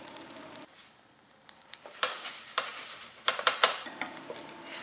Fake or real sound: fake